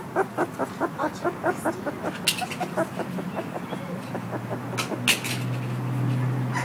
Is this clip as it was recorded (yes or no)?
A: yes